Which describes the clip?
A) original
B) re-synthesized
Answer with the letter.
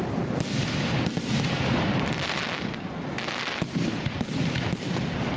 A